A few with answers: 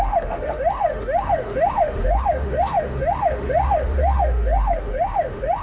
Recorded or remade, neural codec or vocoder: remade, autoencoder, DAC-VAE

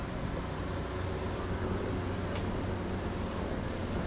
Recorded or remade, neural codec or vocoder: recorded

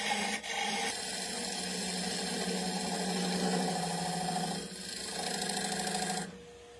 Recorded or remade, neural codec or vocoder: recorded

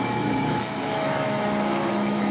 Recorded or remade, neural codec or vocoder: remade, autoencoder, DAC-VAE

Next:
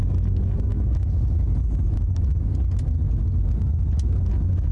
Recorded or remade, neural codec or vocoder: recorded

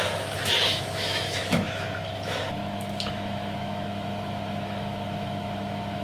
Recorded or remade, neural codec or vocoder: remade, autoencoder, DAC-VAE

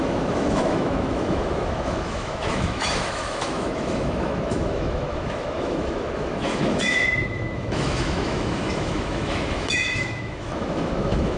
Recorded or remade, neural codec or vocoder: remade, autoencoder, DAC-VAE